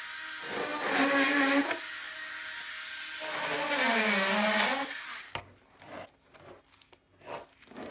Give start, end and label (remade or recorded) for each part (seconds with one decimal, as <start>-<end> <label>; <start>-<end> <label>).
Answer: 0.0-7.9 recorded